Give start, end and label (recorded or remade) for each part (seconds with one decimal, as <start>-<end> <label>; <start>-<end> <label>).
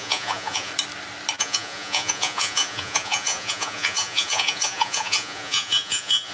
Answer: 0.0-0.7 remade; 0.7-1.4 recorded; 1.4-6.3 remade